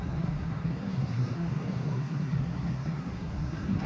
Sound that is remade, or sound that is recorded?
remade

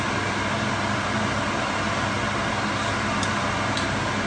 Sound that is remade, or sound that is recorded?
recorded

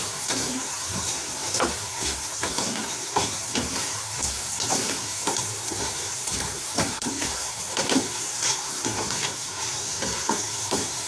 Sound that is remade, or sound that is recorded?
remade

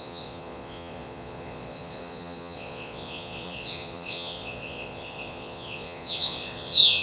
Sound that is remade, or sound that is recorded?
remade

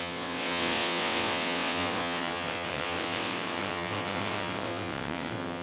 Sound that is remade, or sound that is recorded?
remade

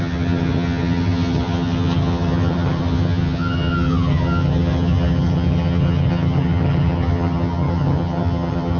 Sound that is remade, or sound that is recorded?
remade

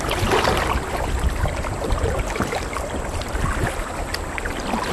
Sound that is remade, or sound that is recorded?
recorded